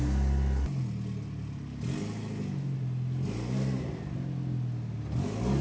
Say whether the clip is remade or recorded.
recorded